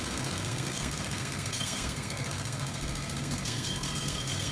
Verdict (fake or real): fake